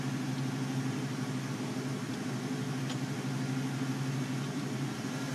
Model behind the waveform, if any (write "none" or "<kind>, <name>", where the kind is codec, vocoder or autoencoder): none